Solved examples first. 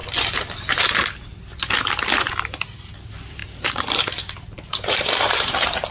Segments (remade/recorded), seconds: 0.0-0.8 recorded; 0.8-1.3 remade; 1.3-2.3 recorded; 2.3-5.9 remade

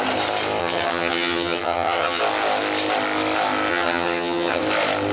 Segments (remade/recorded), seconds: 0.0-0.6 recorded; 0.6-2.2 remade; 2.2-3.7 recorded; 3.7-4.6 remade; 4.6-5.1 recorded